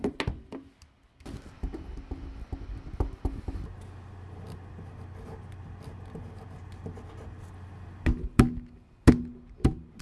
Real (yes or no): yes